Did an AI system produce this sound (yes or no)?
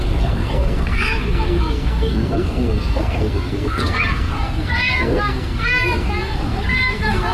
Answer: yes